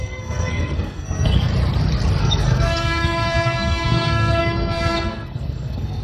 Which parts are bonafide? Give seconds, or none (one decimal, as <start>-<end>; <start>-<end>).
1.5-2.2